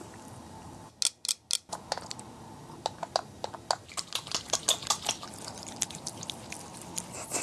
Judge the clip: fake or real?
real